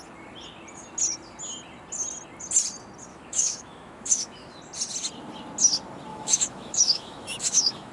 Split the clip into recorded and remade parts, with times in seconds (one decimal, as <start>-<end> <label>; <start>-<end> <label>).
0.0-3.1 recorded; 3.1-4.6 remade; 4.6-6.1 recorded; 6.1-7.9 remade

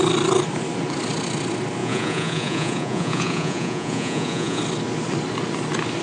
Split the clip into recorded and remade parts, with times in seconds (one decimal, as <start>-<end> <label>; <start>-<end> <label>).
0.0-1.8 recorded; 1.8-4.6 remade; 4.6-6.0 recorded

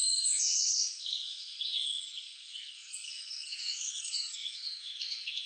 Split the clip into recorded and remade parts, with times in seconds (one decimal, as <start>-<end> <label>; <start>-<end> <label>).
0.0-5.5 remade

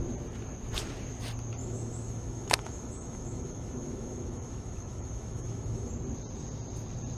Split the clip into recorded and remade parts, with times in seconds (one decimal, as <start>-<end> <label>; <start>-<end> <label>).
0.0-1.6 recorded; 1.6-5.9 remade; 5.9-7.2 recorded